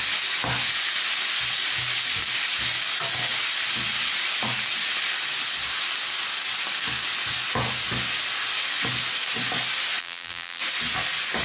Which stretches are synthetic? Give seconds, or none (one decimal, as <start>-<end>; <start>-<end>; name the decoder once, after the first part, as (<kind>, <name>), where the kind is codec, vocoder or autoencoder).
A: 10.0-10.6 (vocoder, BigVGAN v2)